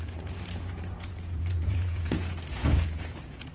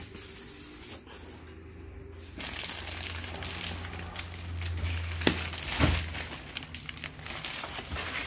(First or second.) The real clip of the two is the second